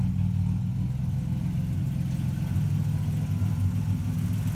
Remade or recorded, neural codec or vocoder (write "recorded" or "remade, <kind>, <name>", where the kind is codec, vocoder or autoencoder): recorded